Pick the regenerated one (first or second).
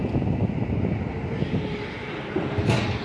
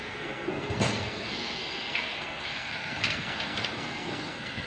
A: second